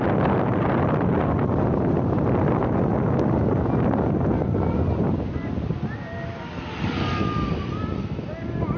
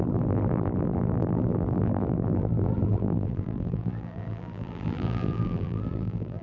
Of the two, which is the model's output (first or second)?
second